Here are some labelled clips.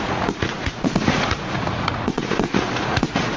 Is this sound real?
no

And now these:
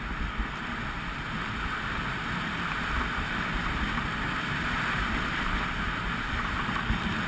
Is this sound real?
yes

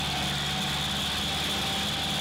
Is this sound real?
yes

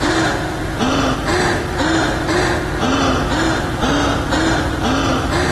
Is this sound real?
yes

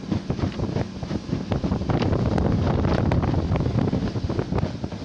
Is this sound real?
yes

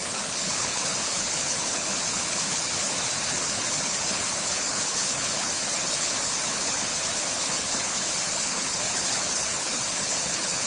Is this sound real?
no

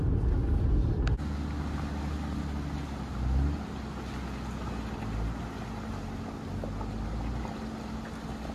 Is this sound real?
yes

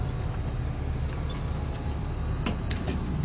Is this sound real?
yes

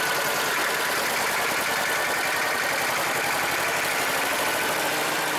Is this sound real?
yes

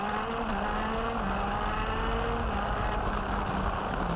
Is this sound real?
yes